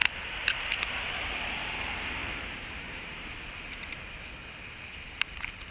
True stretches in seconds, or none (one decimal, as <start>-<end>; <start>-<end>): 0.0-2.2; 3.3-5.7